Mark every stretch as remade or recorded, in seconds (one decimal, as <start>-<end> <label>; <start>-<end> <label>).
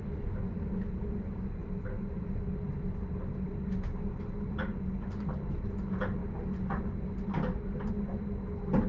0.0-8.9 recorded